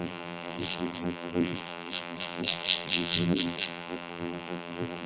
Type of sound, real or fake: fake